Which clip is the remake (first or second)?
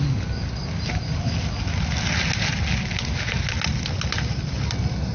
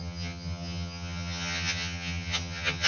second